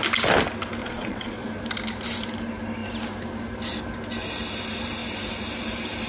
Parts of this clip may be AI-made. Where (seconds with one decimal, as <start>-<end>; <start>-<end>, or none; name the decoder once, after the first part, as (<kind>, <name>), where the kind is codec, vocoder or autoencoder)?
0.8-1.5 (vocoder, Vocos)